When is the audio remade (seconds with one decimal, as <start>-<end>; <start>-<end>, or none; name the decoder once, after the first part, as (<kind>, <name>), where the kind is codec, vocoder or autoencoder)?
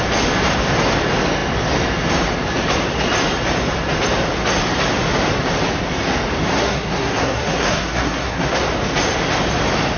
6.5-8.6 (codec, SNAC)